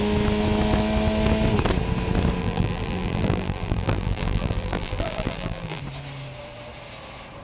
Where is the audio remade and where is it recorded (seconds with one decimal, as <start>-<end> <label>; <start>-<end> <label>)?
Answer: 0.0-2.4 recorded; 2.4-5.8 remade; 5.8-7.4 recorded